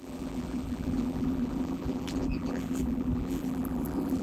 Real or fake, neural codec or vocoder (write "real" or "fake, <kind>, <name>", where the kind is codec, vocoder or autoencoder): fake, vocoder, BigVGAN v2